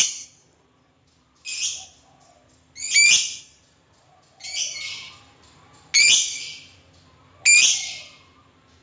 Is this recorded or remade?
recorded